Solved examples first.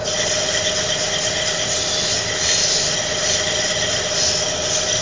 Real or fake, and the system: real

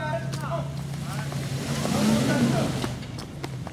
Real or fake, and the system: real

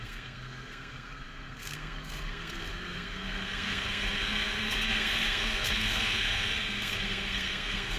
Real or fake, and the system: fake, codec, SNAC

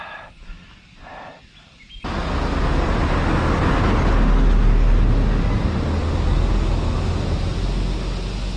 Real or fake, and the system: real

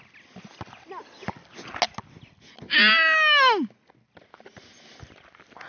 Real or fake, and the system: real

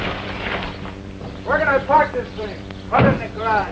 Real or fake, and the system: fake, vocoder, BigVGAN v2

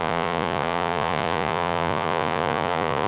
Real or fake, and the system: fake, vocoder, Vocos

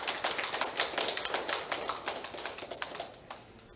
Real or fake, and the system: real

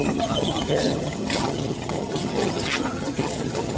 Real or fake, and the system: fake, vocoder, HiFi-GAN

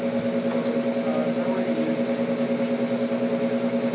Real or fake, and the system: real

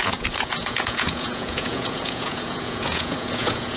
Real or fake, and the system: fake, vocoder, Vocos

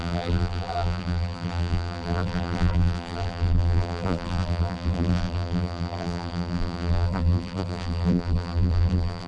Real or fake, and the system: fake, vocoder, BigVGAN v2